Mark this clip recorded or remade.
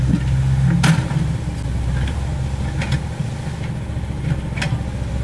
recorded